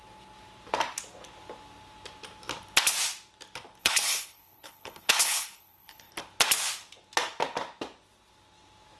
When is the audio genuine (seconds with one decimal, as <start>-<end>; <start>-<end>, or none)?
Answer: 0.0-3.8; 6.1-9.0